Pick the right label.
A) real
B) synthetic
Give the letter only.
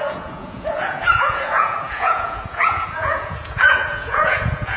B